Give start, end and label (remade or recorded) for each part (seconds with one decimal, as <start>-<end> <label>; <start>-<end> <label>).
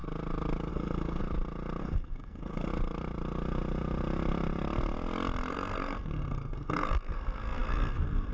0.0-0.7 recorded; 0.7-1.2 remade; 1.2-1.8 recorded; 1.8-2.7 remade; 2.7-5.5 recorded; 5.5-8.3 remade